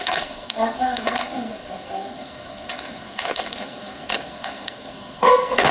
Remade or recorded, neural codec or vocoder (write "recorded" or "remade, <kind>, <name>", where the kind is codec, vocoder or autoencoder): remade, codec, SNAC